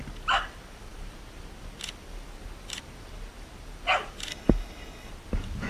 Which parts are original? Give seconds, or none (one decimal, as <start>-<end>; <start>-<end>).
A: 0.0-4.3; 5.1-5.7